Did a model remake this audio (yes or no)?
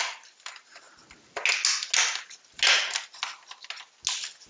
no